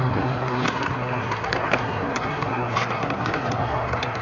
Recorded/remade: remade